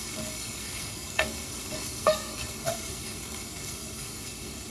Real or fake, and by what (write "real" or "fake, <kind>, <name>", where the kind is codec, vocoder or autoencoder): fake, codec, SNAC